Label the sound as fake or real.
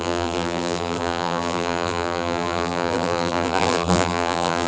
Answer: fake